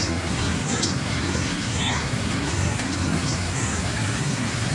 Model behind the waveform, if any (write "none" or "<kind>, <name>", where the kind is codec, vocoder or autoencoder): codec, SNAC